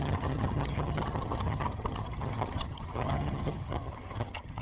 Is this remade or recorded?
remade